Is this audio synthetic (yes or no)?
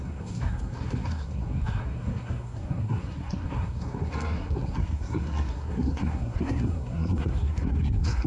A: yes